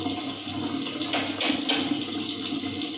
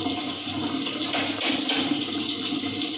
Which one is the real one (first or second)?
first